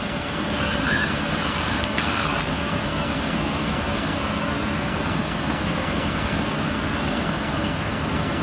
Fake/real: fake